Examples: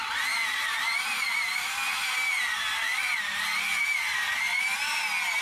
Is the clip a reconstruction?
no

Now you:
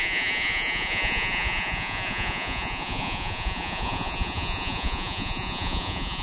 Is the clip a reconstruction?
yes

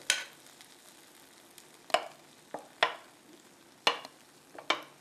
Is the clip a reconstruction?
no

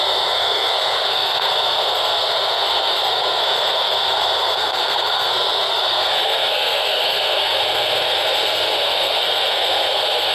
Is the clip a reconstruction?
yes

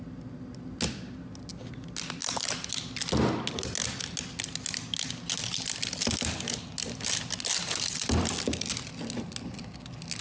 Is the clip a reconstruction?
no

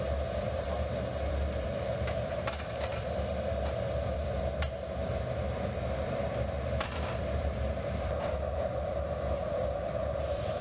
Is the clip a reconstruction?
yes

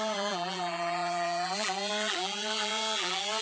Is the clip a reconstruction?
yes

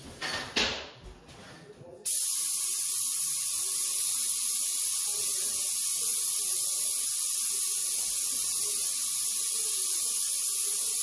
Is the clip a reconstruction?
no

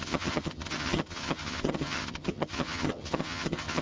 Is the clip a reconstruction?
yes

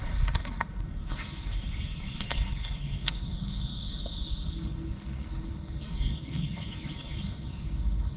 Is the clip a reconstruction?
yes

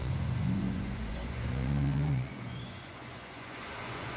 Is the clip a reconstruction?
yes